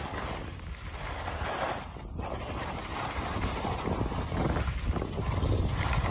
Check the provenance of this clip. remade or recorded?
recorded